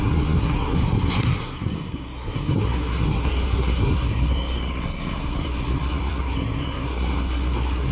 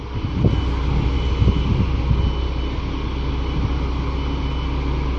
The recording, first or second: second